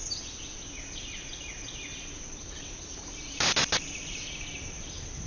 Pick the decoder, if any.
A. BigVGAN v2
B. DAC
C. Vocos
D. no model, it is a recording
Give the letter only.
D